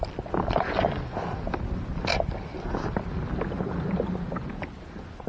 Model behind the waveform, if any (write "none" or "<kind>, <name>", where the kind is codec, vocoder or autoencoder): none